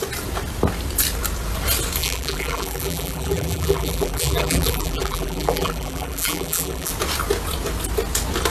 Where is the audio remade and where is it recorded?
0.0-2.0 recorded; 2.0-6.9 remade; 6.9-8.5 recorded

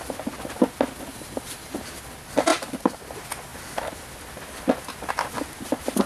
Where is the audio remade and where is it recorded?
0.0-1.1 recorded; 1.1-1.8 remade; 1.8-6.1 recorded

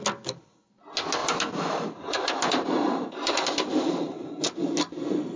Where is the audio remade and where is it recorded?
0.0-1.2 recorded; 1.2-4.4 remade; 4.4-5.4 recorded

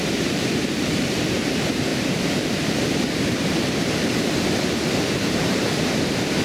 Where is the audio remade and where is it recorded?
0.0-6.4 remade

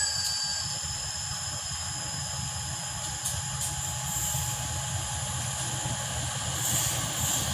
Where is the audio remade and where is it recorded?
0.0-7.5 recorded

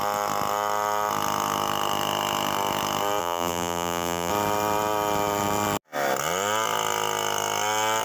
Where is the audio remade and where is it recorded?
0.0-3.2 recorded; 3.2-4.3 remade; 4.3-8.0 recorded

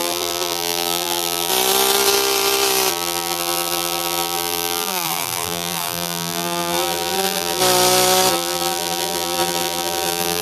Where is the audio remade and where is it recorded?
0.0-1.5 remade; 1.5-2.9 recorded; 2.9-7.6 remade; 7.6-8.3 recorded; 8.3-10.4 remade

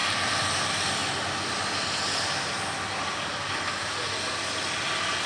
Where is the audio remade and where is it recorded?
0.0-5.3 recorded